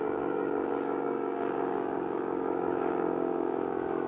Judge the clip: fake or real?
fake